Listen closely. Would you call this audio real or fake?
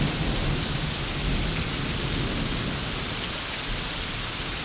real